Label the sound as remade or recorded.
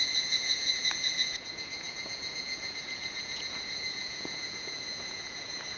remade